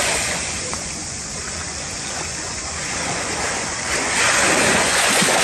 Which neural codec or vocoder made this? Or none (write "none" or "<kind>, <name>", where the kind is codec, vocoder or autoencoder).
vocoder, Vocos